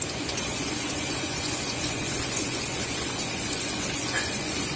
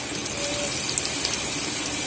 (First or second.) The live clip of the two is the second